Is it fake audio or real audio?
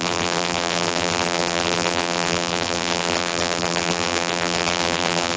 fake